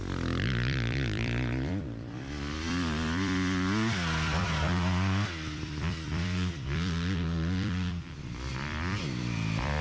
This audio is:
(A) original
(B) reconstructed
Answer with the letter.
B